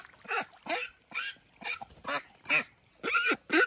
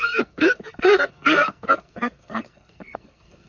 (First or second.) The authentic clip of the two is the first